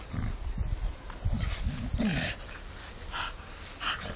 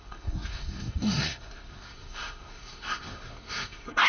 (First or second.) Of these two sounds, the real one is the first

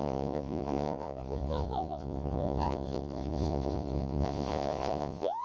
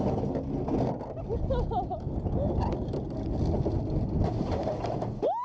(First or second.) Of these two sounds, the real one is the second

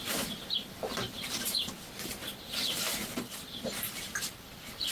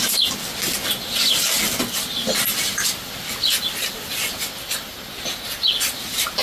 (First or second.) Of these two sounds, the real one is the second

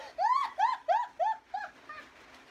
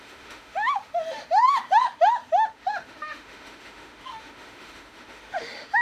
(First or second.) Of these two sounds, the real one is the first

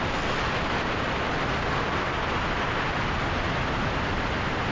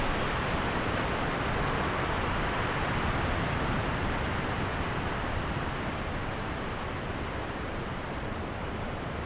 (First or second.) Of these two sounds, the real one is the first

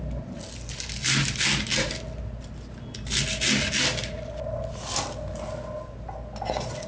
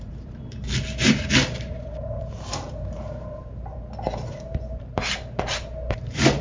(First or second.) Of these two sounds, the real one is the first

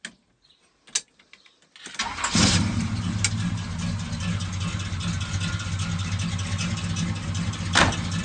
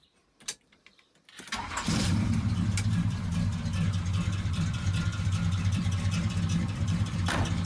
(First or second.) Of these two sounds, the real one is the first